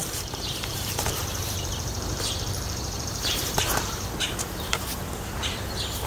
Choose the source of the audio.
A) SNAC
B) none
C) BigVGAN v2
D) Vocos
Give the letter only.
C